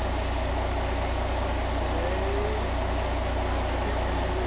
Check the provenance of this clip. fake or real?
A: real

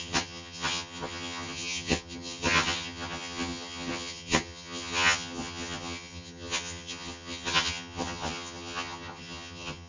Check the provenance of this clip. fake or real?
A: fake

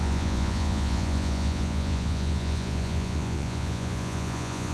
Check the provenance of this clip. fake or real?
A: fake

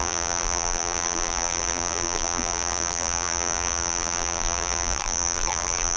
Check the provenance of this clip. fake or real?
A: fake